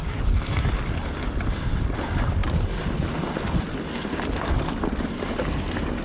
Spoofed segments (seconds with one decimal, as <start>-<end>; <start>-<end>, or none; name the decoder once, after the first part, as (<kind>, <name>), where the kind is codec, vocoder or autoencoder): none